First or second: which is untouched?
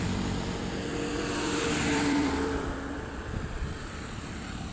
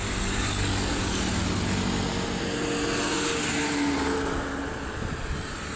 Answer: second